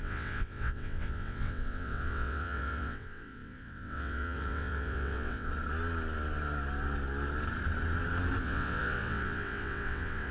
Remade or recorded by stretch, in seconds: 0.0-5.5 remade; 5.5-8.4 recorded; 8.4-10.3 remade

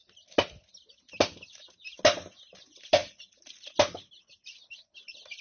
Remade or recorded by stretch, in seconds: 0.0-5.4 recorded

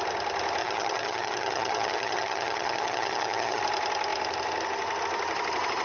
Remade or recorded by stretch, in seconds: 0.0-0.6 recorded; 0.6-3.6 remade; 3.6-5.8 recorded

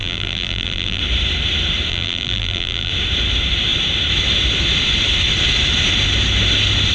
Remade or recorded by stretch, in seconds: 0.0-1.0 remade; 1.0-1.9 recorded; 1.9-2.9 remade; 2.9-6.9 recorded

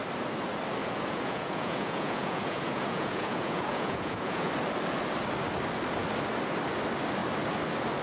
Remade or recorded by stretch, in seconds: 0.0-0.8 recorded; 0.8-4.5 remade; 4.5-8.0 recorded